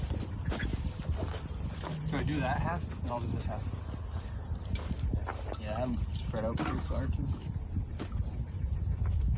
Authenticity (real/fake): fake